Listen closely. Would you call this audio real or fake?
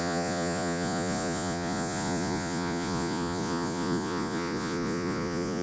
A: fake